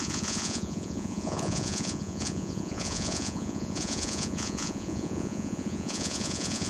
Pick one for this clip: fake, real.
fake